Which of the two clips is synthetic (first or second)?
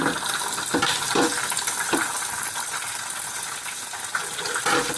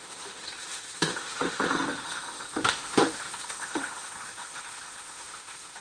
second